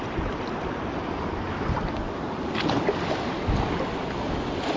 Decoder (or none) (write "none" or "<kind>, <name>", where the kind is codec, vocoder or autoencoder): none